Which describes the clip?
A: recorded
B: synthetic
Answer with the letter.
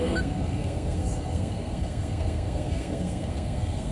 B